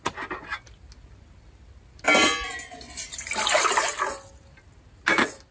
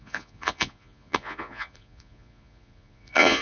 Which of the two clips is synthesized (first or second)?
second